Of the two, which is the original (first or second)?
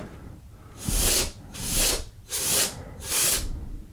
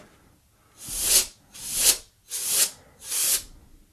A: second